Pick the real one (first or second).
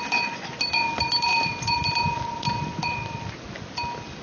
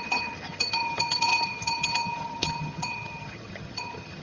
first